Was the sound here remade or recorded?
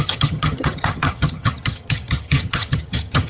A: remade